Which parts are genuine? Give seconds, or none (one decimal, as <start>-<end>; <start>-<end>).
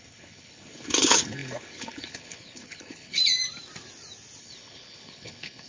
3.2-4.4